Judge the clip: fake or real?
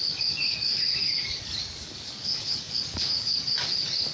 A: fake